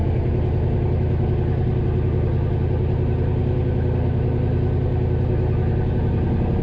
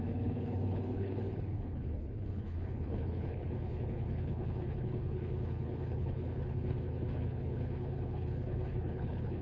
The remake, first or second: second